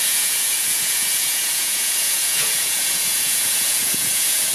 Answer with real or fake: fake